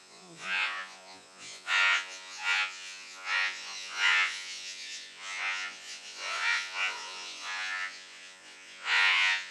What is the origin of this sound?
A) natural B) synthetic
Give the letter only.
B